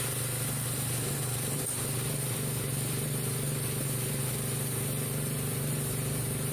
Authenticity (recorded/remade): remade